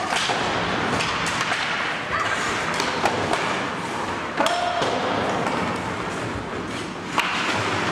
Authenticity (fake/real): real